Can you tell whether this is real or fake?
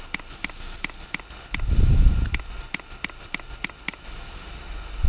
real